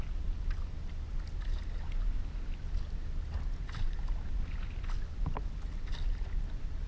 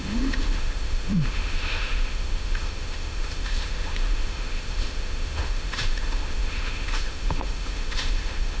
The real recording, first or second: first